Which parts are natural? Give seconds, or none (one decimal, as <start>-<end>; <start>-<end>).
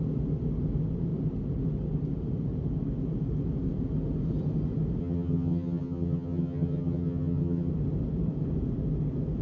0.0-5.0; 7.7-9.4